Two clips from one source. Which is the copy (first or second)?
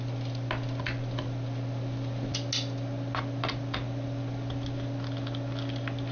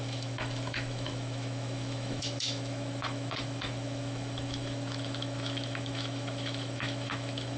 second